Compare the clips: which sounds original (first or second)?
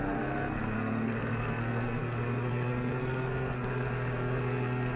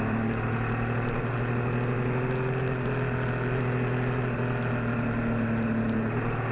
second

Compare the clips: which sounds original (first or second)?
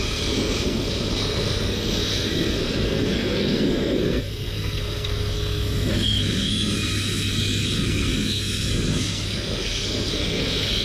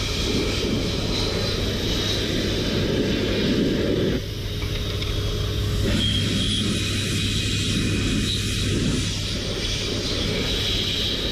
second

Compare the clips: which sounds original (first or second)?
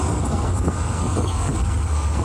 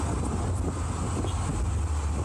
second